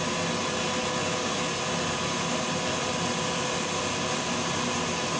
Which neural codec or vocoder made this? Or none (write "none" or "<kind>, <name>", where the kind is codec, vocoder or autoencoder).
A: none